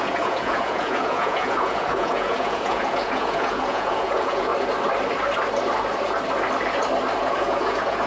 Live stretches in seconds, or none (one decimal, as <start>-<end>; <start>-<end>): 4.5-7.2